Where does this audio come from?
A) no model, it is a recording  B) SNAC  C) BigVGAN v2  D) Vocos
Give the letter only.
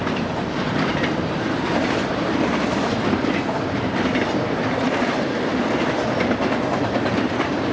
A